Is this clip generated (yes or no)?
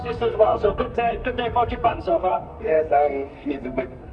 yes